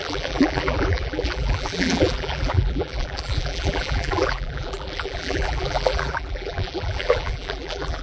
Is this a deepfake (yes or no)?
yes